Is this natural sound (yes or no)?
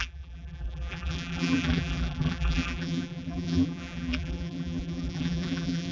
no